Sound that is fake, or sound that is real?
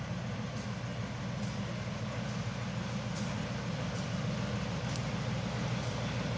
real